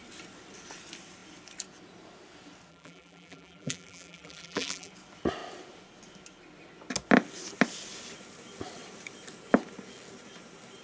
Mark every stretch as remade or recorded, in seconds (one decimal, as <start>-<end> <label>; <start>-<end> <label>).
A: 0.0-2.7 recorded; 2.7-4.9 remade; 4.9-10.8 recorded